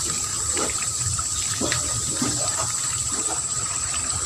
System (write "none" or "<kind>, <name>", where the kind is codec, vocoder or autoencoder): vocoder, BigVGAN v2